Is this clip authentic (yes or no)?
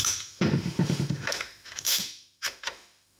no